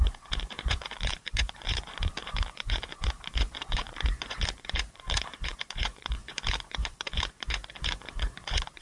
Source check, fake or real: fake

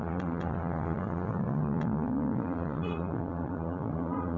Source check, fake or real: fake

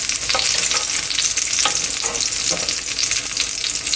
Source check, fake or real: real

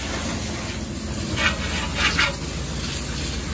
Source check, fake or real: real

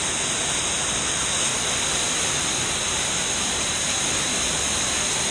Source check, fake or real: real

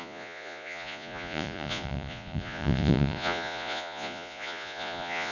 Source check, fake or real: fake